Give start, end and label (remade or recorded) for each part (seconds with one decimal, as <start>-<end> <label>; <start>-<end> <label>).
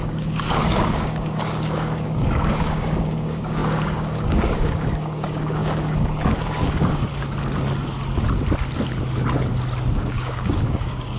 0.0-7.1 remade; 7.1-9.9 recorded; 9.9-11.2 remade